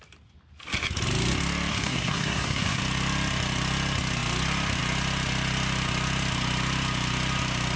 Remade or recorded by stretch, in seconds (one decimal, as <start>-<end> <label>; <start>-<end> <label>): 0.0-1.7 recorded; 1.7-2.8 remade; 2.8-7.8 recorded